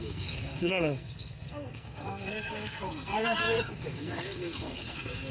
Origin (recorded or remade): remade